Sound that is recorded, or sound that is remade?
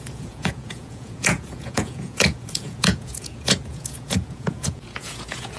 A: remade